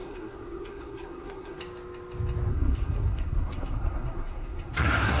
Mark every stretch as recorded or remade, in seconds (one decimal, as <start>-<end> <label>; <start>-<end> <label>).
0.0-1.6 remade; 1.6-2.5 recorded; 2.5-5.2 remade